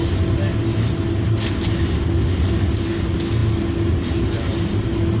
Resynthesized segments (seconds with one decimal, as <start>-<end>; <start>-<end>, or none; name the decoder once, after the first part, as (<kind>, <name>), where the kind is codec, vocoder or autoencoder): none